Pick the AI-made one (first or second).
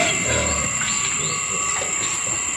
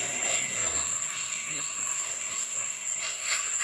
second